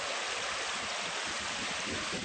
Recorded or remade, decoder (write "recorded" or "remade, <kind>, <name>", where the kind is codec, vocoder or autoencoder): recorded